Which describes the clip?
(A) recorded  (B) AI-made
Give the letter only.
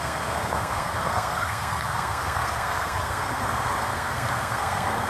B